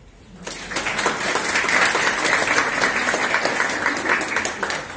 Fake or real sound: real